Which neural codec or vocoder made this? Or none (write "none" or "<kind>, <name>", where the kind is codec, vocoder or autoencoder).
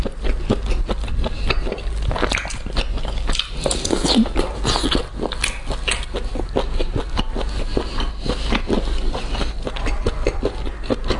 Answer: none